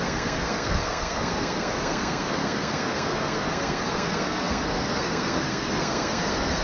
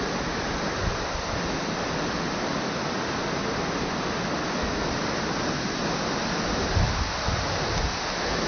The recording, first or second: second